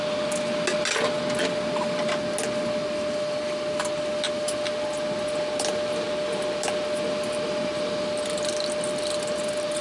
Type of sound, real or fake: real